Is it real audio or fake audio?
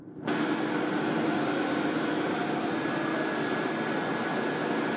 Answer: real